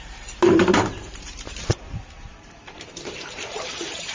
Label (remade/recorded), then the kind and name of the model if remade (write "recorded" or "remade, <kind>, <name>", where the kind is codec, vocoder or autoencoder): remade, vocoder, BigVGAN v2